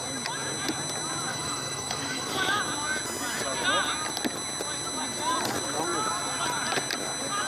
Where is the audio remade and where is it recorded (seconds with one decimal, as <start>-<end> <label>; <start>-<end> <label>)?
0.0-1.3 recorded; 1.3-2.6 remade; 2.6-7.5 recorded